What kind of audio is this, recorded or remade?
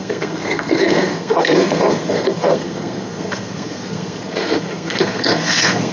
remade